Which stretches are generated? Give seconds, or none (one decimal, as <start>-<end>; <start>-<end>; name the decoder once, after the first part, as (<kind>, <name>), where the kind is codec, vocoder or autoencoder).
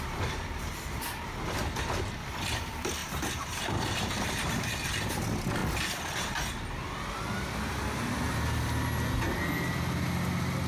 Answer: 0.0-5.6 (vocoder, BigVGAN v2)